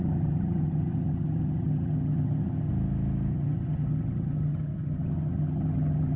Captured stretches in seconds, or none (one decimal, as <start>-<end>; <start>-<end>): 2.7-3.3